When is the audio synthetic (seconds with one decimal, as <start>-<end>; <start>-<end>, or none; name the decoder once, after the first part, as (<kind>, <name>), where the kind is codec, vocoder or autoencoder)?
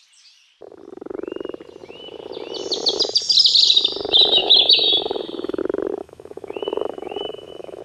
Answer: 4.4-5.6 (autoencoder, DAC-VAE); 6.0-7.8